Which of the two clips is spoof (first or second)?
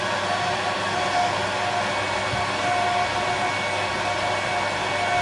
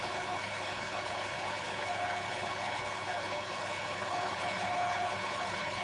second